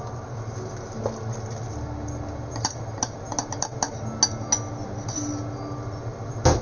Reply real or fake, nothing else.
real